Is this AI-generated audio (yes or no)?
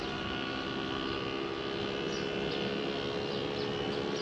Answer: no